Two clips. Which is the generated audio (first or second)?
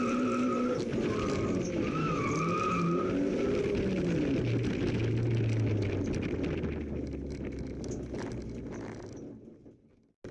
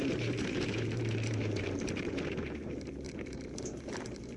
second